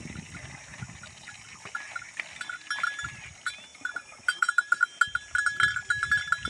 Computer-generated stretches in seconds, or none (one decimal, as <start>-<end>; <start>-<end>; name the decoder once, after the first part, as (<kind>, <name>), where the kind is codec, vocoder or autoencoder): 0.7-1.4 (vocoder, BigVGAN v2); 3.7-4.8